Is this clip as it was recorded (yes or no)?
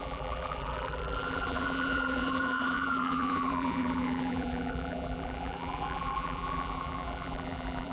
no